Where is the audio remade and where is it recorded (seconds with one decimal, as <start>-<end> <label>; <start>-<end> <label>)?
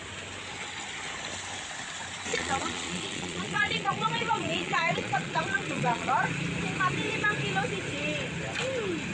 0.0-2.3 recorded; 2.3-6.1 remade; 6.1-9.1 recorded